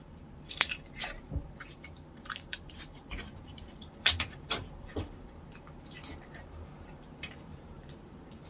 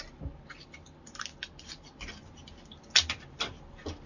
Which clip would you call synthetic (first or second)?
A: first